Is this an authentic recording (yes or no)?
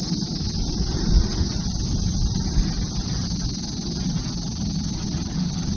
yes